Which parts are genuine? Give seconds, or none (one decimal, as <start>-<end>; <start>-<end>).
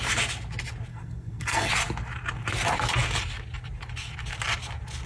0.0-0.9; 1.7-5.1